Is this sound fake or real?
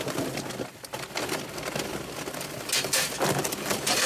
real